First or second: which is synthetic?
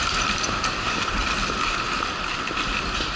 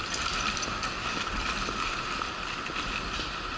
first